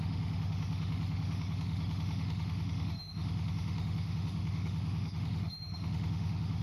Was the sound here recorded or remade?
remade